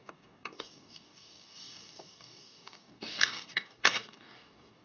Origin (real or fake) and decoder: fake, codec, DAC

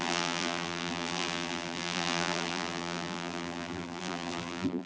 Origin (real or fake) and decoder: fake, vocoder, BigVGAN v2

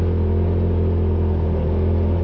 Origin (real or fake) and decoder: real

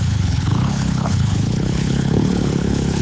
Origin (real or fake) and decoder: fake, codec, HILCodec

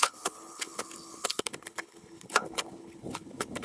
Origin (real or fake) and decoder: fake, codec, HILCodec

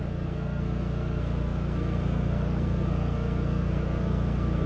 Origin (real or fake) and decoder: fake, codec, SNAC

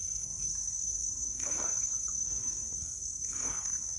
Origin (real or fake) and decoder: fake, codec, SNAC